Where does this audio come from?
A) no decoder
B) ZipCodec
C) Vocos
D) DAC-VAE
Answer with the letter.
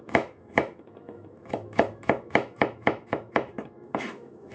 D